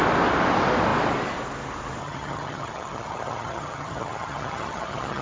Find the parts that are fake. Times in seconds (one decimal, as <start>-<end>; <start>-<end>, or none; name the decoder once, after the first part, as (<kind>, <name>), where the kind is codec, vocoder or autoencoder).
2.0-5.2 (vocoder, HiFi-GAN)